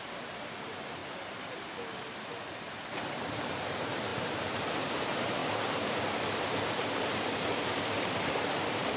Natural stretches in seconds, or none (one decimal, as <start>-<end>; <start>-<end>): 1.0-2.8